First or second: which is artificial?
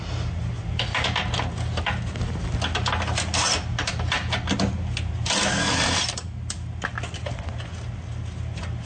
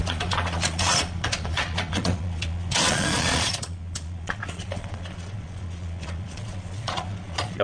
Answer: second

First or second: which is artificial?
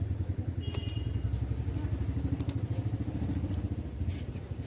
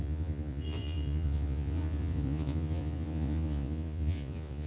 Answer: second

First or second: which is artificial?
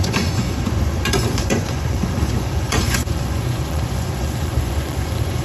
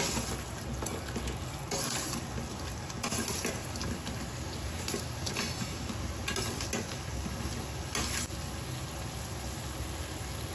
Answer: first